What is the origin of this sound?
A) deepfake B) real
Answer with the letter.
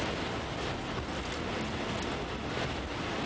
B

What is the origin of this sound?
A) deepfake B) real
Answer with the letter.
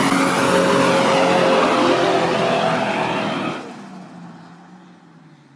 B